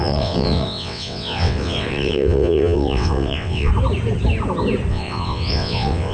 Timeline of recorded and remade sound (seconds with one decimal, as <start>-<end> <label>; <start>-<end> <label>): 0.0-3.7 remade; 3.7-4.9 recorded; 4.9-6.1 remade